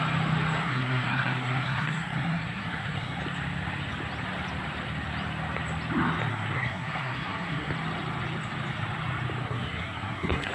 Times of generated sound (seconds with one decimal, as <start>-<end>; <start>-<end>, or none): 0.6-3.2; 6.3-7.7; 9.4-10.5